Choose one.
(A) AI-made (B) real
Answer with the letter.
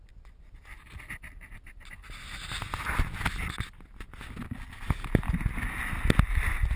B